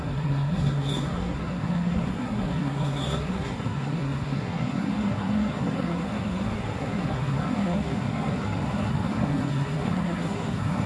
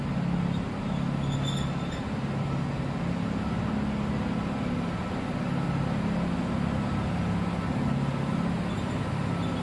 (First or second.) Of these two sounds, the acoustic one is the second